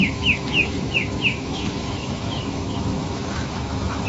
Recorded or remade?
remade